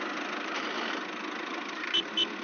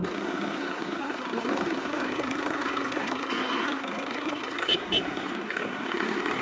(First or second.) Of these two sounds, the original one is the first